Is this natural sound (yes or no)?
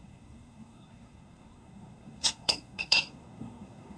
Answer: no